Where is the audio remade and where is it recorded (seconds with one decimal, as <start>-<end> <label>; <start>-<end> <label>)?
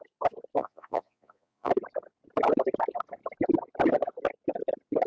0.0-0.6 recorded; 0.6-1.7 remade; 1.7-5.1 recorded